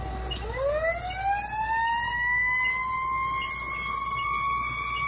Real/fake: real